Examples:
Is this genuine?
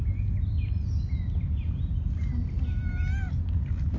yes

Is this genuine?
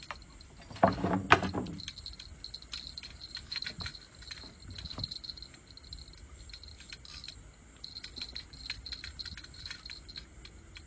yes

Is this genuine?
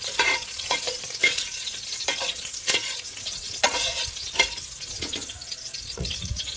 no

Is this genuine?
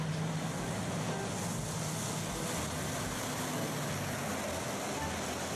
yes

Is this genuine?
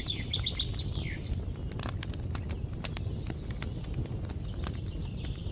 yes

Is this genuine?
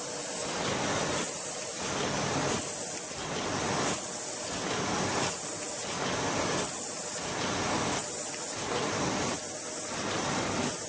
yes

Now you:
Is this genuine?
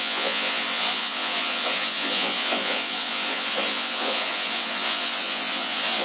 no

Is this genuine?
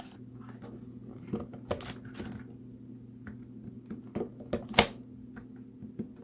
yes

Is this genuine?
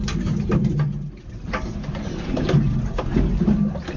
yes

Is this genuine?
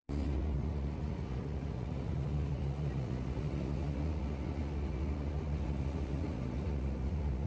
no